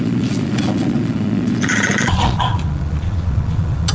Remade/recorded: remade